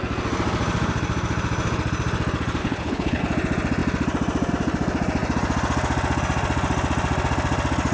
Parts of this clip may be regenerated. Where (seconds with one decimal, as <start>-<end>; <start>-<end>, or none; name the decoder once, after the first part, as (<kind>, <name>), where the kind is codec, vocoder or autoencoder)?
2.6-3.2 (codec, HILCodec)